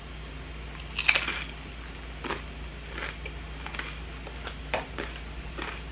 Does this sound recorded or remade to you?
recorded